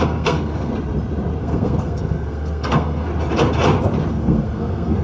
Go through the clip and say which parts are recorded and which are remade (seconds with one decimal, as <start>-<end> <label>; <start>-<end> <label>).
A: 0.0-0.7 remade; 0.7-1.4 recorded; 1.4-3.1 remade; 3.1-4.1 recorded; 4.1-5.0 remade